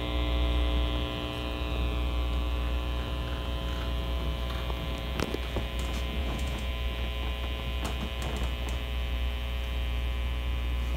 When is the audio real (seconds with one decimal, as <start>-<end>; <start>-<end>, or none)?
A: 0.0-6.2; 6.7-11.0